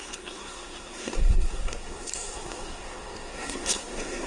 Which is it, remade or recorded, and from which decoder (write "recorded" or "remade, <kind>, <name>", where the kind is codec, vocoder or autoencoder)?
remade, codec, SNAC